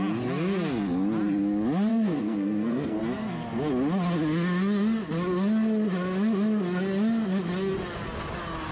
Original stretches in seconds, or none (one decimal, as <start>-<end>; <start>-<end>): 0.0-1.9; 3.0-8.7